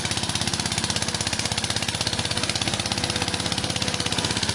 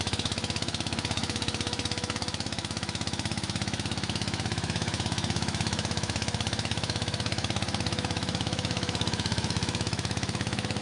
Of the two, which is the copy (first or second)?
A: second